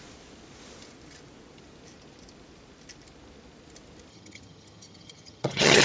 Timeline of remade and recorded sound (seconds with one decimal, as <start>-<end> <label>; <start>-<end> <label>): 0.0-4.1 recorded; 4.1-5.8 remade